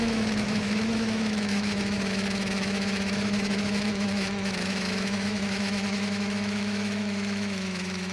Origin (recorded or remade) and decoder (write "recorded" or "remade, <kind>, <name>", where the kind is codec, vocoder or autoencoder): remade, autoencoder, DAC-VAE